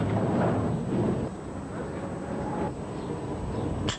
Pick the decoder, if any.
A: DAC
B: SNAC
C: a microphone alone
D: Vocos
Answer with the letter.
C